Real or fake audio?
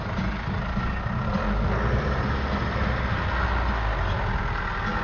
real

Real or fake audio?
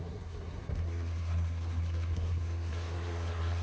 fake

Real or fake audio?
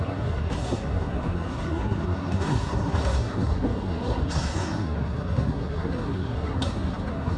fake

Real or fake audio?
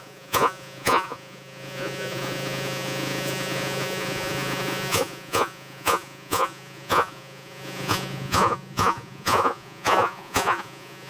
fake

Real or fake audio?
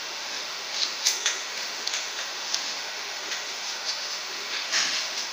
fake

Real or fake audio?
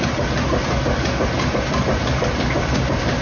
real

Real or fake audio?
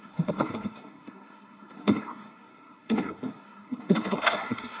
fake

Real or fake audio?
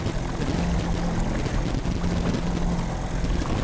real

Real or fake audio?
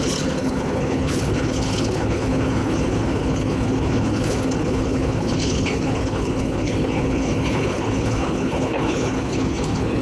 fake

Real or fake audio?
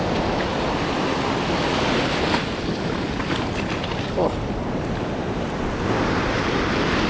real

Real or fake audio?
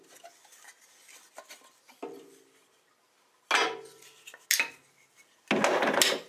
real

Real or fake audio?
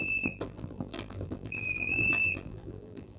fake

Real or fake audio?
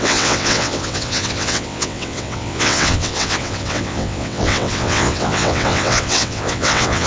fake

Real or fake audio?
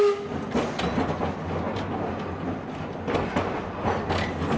real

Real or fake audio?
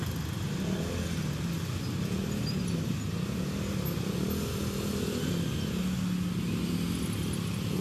real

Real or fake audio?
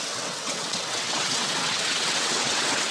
fake